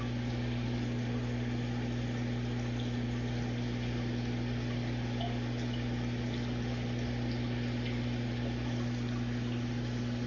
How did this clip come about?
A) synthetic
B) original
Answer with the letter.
B